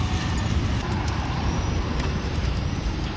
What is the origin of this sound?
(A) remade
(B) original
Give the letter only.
A